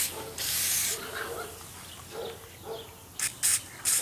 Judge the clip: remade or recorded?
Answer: recorded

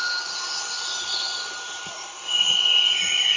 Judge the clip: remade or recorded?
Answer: recorded